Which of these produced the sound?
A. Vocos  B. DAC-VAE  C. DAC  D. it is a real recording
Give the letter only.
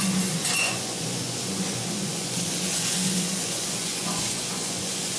A